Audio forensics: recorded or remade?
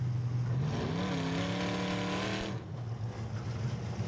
recorded